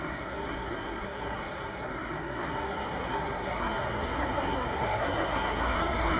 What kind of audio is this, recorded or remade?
remade